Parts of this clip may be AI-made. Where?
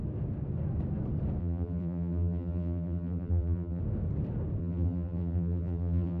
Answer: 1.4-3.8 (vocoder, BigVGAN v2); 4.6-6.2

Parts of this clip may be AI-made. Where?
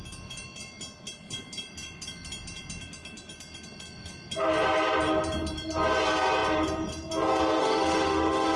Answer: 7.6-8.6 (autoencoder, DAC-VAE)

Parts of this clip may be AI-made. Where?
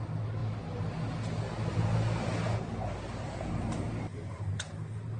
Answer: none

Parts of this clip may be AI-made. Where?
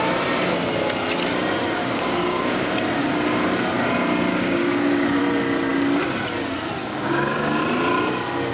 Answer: 1.8-2.7 (codec, DAC); 4.3-5.2; 6.8-7.6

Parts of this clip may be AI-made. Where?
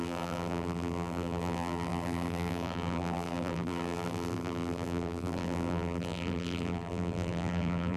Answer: 0.0-8.0 (vocoder, BigVGAN v2)